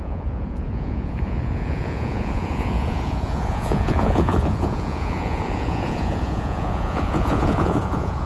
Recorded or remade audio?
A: remade